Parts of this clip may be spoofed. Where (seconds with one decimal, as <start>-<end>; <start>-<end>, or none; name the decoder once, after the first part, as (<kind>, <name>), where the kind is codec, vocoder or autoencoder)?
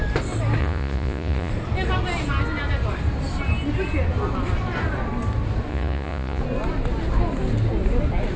0.6-1.5 (vocoder, Vocos); 5.7-6.4